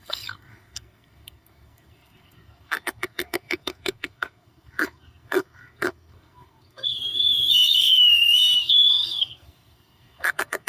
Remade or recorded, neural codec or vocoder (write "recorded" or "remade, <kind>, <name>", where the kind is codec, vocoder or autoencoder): remade, codec, SNAC